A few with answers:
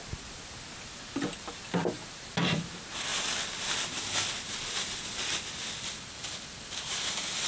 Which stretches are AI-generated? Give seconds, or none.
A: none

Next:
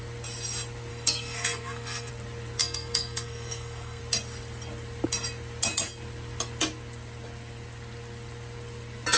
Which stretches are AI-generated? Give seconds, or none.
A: 0.9-2.1 (codec, SNAC); 2.6-4.0

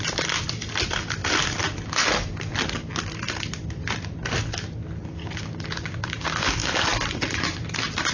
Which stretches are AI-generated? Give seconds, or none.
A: 5.2-6.7 (codec, DAC)

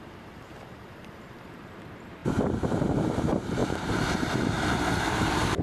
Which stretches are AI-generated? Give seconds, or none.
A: 0.0-5.6 (vocoder, BigVGAN v2)

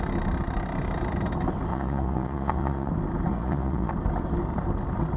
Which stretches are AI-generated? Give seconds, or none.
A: 1.7-2.9 (vocoder, Vocos); 3.3-3.9

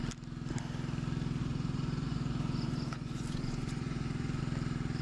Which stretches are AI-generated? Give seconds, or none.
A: 1.4-4.4 (vocoder, Vocos)

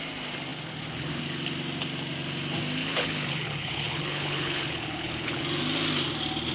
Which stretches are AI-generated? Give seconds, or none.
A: 2.8-5.4 (codec, HILCodec)